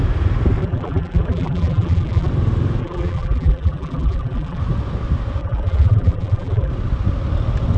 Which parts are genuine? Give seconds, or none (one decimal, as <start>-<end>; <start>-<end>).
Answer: 0.0-0.6; 2.3-2.8; 4.6-5.4; 6.7-7.8